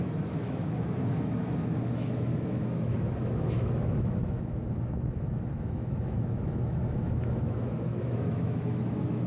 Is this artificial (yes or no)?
yes